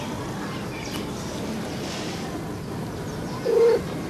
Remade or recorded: recorded